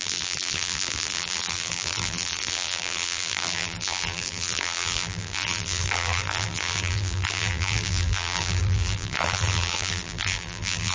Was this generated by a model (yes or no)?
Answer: yes